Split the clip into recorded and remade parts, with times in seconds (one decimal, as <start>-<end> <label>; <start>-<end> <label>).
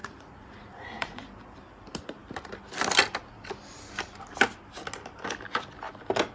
0.0-1.2 remade; 1.2-6.3 recorded